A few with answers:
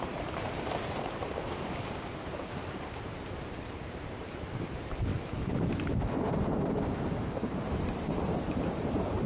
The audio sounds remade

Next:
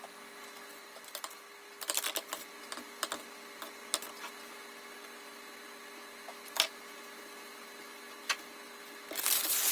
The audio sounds recorded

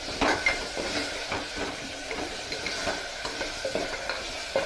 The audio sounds remade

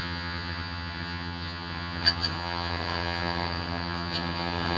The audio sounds remade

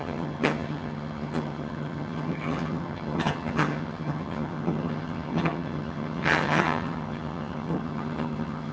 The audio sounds remade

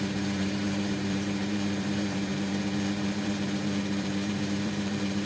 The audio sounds remade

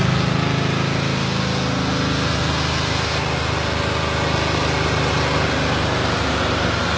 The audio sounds recorded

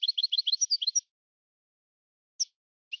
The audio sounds recorded